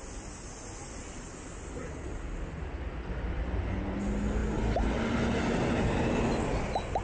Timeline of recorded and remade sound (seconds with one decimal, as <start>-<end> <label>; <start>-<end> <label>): 0.0-7.0 recorded